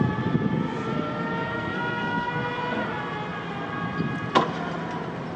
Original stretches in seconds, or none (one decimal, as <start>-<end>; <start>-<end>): 0.0-1.5; 2.6-5.4